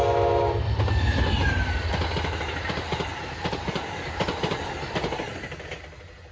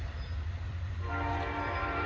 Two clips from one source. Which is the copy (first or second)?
second